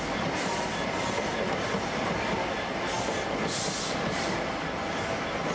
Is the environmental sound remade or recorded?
recorded